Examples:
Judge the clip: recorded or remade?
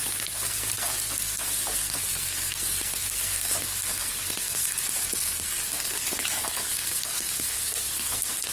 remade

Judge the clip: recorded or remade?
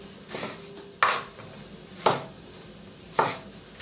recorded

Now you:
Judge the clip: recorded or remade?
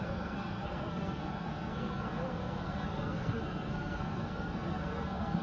remade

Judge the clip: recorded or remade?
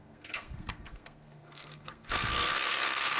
remade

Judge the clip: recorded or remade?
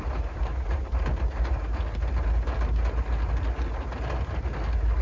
recorded